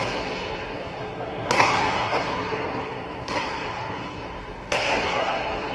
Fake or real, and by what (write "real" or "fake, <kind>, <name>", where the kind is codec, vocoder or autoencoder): fake, codec, SNAC